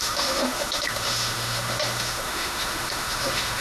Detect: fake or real fake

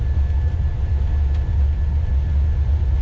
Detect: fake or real real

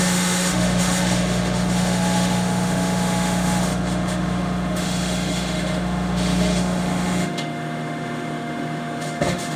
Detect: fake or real fake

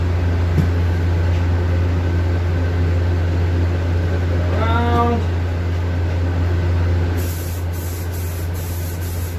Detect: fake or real real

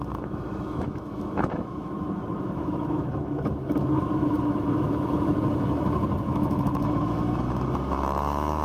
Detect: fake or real fake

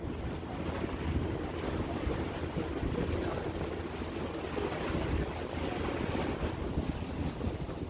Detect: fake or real real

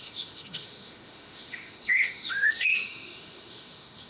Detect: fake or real fake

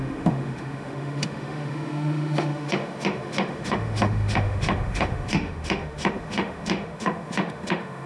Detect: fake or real fake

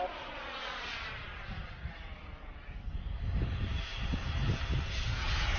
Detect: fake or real real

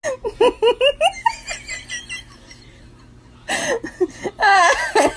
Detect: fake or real real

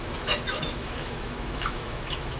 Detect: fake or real fake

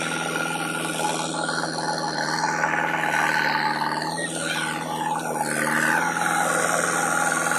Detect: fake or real real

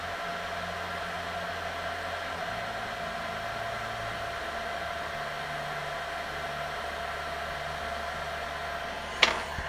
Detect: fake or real real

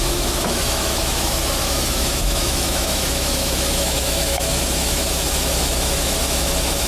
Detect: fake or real fake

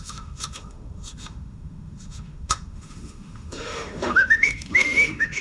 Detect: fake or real fake